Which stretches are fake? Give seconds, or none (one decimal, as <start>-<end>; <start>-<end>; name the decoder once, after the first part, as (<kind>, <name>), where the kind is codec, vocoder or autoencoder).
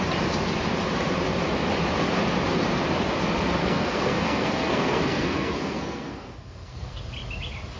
3.6-7.0 (codec, SNAC)